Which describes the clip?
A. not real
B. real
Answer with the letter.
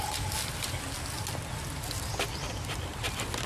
B